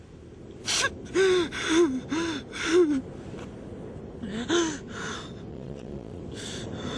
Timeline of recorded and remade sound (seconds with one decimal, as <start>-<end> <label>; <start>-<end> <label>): 0.0-5.5 recorded; 5.5-6.2 remade; 6.2-7.0 recorded